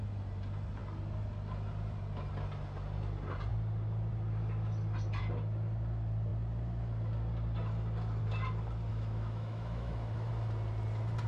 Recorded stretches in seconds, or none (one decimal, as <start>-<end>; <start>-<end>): 0.0-8.9; 10.3-11.3